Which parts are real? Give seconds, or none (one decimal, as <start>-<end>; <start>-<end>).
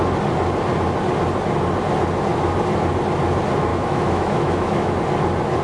0.0-3.7; 4.9-5.6